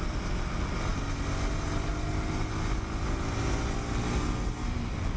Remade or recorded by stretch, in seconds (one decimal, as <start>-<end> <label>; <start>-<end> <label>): 0.0-5.2 recorded